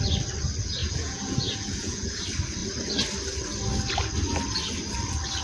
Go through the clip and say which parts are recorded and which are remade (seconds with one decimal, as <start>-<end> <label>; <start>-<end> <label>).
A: 0.0-0.8 recorded; 0.8-2.2 remade; 2.2-5.4 recorded